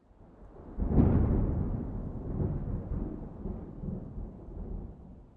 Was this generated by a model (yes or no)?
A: yes